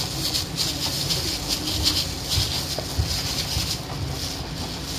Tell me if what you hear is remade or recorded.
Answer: recorded